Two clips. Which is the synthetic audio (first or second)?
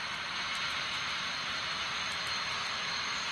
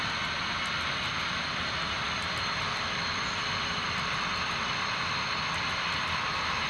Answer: first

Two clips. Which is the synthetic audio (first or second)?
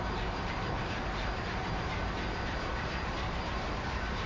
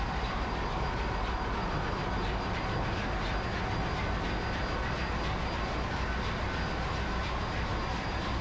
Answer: first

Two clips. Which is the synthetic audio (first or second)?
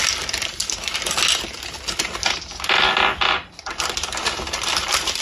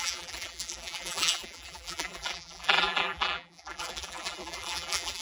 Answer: second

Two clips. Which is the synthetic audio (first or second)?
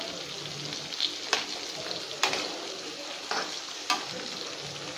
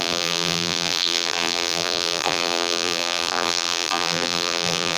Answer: second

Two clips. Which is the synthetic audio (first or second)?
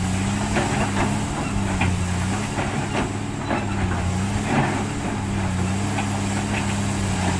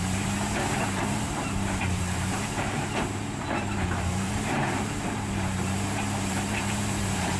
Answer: second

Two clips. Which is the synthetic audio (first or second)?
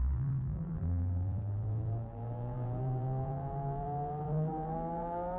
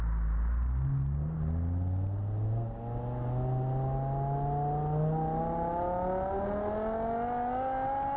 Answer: first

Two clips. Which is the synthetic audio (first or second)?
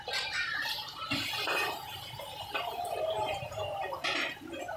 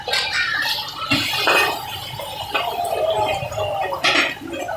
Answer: first